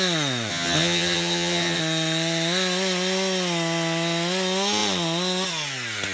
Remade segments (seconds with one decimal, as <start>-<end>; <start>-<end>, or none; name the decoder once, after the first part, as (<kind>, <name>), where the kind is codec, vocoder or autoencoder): 0.5-1.8 (vocoder, HiFi-GAN)